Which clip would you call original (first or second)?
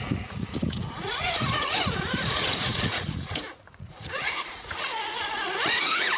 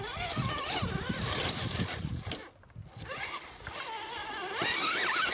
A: second